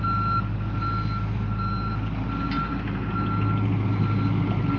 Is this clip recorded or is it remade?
recorded